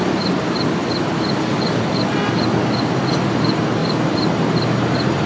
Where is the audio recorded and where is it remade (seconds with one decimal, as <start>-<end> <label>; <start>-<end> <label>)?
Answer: 0.0-3.8 recorded; 3.8-5.3 remade